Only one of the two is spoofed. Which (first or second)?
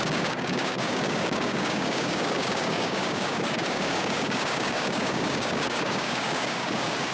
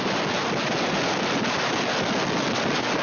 first